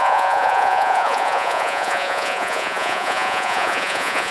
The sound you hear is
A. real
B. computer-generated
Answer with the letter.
B